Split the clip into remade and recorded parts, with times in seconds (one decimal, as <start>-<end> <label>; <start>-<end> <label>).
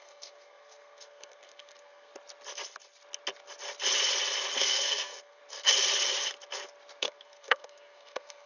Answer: 0.0-2.1 remade; 2.1-4.6 recorded; 4.6-5.4 remade; 5.4-7.0 recorded; 7.0-8.5 remade